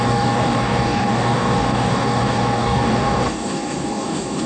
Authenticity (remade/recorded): remade